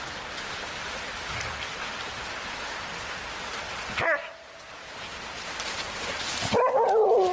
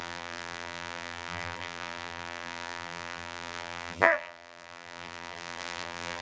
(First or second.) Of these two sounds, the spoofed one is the second